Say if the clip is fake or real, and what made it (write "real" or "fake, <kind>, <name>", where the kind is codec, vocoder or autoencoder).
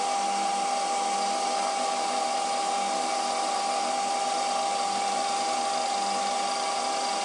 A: real